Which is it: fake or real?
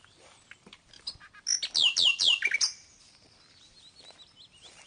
real